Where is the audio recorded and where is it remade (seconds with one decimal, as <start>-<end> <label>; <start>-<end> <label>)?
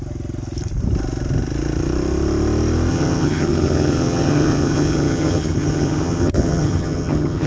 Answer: 0.0-2.9 recorded; 2.9-7.5 remade